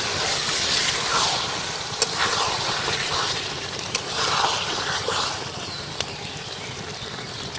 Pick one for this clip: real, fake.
real